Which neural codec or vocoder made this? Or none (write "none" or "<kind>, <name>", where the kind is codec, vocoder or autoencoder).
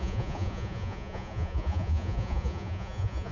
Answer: vocoder, Vocos